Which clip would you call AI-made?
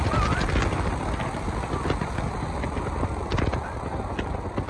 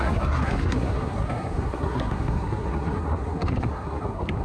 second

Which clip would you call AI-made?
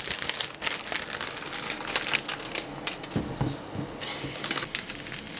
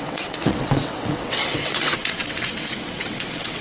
second